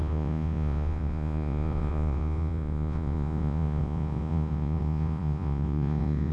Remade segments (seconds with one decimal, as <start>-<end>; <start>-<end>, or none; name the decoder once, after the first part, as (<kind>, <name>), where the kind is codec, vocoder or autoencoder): 0.0-6.3 (vocoder, Vocos)